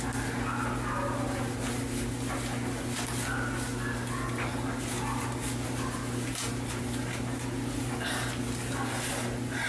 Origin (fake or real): real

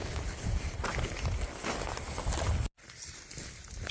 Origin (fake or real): real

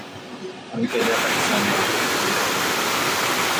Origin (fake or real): real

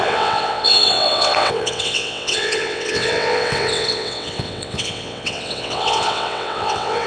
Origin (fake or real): fake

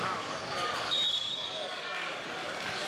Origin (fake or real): fake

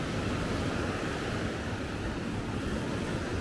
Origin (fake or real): real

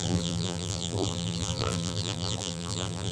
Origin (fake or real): fake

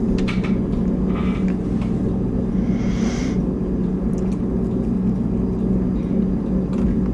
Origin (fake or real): real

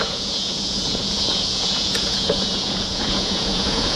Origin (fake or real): fake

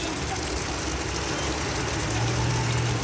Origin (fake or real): real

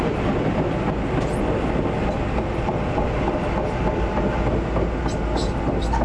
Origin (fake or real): real